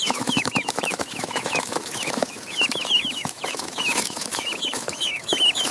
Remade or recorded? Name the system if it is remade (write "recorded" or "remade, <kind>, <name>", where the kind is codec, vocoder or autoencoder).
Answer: remade, autoencoder, DAC-VAE